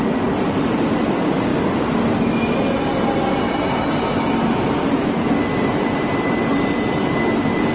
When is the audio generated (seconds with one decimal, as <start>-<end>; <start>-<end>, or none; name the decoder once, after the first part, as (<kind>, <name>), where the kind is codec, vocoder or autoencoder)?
none